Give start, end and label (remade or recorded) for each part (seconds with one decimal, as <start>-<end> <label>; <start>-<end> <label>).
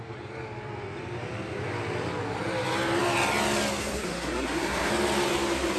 0.0-3.8 recorded; 3.8-4.9 remade; 4.9-5.8 recorded